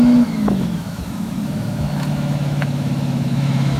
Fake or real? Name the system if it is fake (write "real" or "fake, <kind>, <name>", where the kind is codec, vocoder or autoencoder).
fake, autoencoder, DAC-VAE